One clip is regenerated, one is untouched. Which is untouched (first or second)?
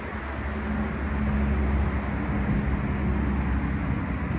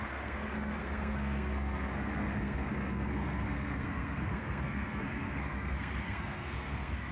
first